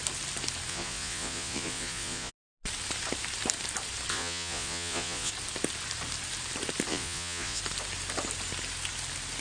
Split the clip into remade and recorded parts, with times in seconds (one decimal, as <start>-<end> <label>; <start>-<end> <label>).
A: 0.0-0.7 recorded; 0.7-2.3 remade; 2.3-4.1 recorded; 4.1-5.3 remade; 5.3-6.9 recorded; 6.9-7.6 remade; 7.6-9.4 recorded